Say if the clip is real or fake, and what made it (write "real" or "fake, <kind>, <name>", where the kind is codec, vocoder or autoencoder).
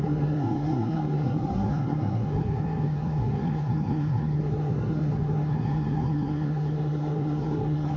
fake, codec, SNAC